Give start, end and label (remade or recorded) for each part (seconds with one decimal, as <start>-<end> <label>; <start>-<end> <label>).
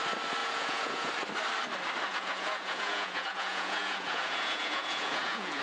0.0-0.4 recorded; 0.4-1.1 remade; 1.1-2.1 recorded; 2.1-5.6 remade